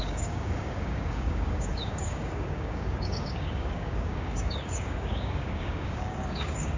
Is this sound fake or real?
fake